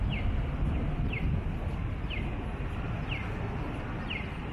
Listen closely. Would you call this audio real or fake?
real